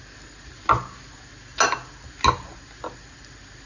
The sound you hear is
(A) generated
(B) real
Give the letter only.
B